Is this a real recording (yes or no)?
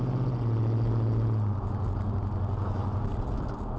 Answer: yes